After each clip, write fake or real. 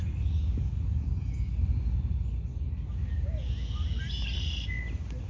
real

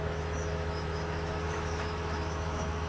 fake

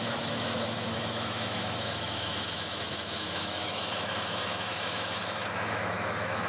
fake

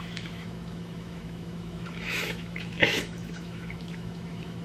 fake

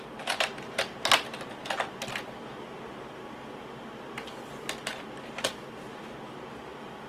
real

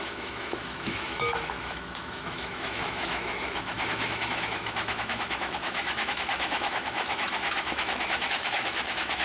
fake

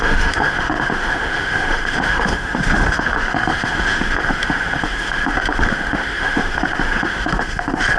fake